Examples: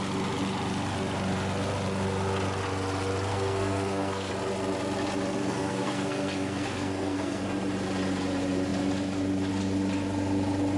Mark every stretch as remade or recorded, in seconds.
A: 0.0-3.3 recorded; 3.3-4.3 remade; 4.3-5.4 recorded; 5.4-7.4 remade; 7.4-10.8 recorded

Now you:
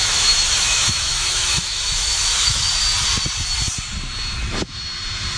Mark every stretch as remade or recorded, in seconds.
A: 0.0-2.8 remade; 2.8-5.4 recorded

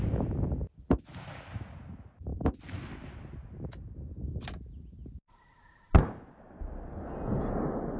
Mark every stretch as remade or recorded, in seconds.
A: 0.0-8.0 recorded

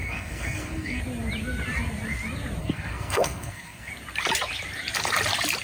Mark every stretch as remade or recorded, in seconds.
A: 0.0-1.0 remade; 1.0-2.6 recorded; 2.6-3.9 remade; 3.9-5.6 recorded

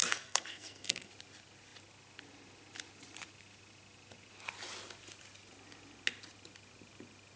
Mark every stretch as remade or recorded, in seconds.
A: 0.0-1.1 remade; 1.1-7.4 recorded